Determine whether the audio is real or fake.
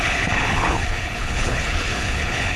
fake